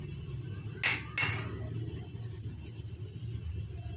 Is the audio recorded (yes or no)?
yes